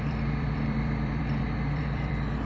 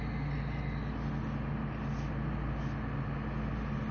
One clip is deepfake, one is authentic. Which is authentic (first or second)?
second